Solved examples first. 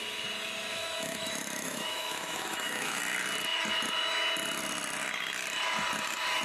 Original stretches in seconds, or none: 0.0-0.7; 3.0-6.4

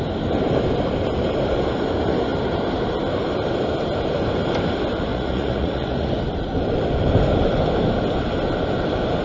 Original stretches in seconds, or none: 0.0-5.1; 6.1-9.2

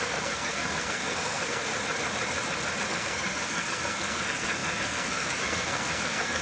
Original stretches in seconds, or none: 1.7-2.9